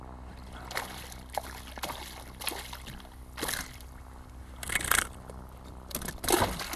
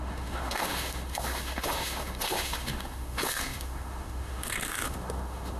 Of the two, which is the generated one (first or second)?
second